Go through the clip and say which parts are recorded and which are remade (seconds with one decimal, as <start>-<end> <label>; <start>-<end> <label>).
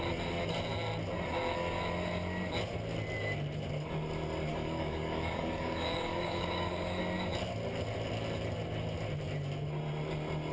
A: 0.0-4.5 recorded; 4.5-7.0 remade; 7.0-10.5 recorded